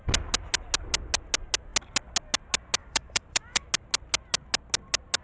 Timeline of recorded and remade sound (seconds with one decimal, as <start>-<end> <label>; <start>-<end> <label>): 0.0-2.8 recorded; 2.8-3.7 remade; 3.7-5.2 recorded